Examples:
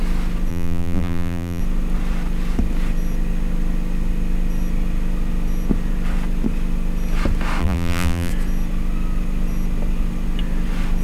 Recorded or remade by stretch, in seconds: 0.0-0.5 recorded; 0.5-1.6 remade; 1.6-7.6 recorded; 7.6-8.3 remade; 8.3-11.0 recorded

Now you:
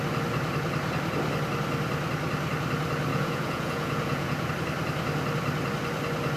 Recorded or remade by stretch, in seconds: 0.0-3.1 recorded; 3.1-4.5 remade; 4.5-6.4 recorded

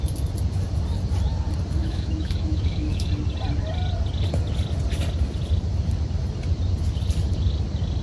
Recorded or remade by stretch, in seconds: 0.0-1.8 recorded; 1.8-3.1 remade; 3.1-8.0 recorded

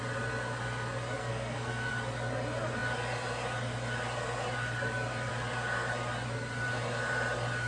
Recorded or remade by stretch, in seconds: 0.0-1.2 recorded; 1.2-1.9 remade; 1.9-7.7 recorded

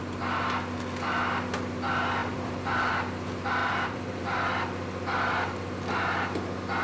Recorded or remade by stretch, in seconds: 0.0-2.2 recorded; 2.2-2.9 remade; 2.9-3.6 recorded; 3.6-4.2 remade; 4.2-6.8 recorded

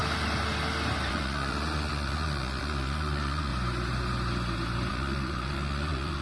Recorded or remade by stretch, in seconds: 0.0-1.1 recorded; 1.1-3.5 remade; 3.5-4.9 recorded; 4.9-6.2 remade

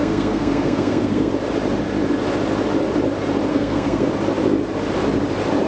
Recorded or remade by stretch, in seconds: 0.0-1.3 remade; 1.3-3.5 recorded; 3.5-4.1 remade; 4.1-5.7 recorded

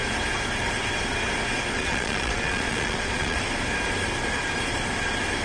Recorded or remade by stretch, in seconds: 0.0-1.8 recorded; 1.8-3.4 remade; 3.4-5.4 recorded